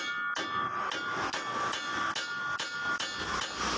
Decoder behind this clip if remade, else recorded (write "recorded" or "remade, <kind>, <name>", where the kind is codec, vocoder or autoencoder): recorded